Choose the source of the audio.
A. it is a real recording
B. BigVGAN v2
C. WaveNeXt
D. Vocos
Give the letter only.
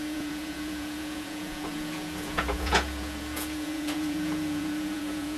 D